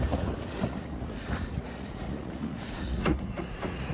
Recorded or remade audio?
remade